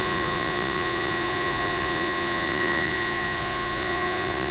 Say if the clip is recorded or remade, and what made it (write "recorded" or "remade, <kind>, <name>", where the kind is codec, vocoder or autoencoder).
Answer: remade, vocoder, Vocos